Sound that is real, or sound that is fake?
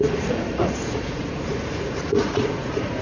fake